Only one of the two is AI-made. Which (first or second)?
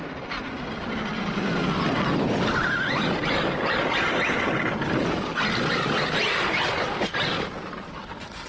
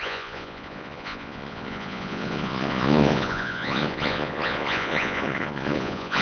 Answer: second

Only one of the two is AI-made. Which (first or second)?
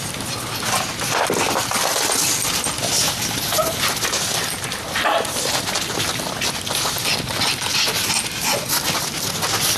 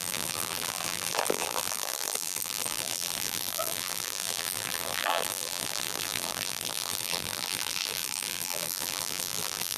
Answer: second